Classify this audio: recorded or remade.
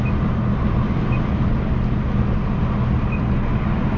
recorded